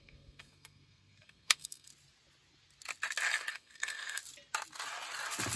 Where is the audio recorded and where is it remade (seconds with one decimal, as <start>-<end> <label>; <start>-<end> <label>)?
0.0-1.9 remade; 1.9-3.5 recorded; 3.5-4.2 remade; 4.2-5.6 recorded